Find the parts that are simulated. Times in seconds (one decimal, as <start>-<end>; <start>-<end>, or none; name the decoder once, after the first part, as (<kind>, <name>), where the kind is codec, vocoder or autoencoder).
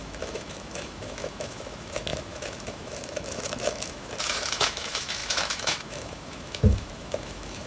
0.0-7.7 (autoencoder, DAC-VAE)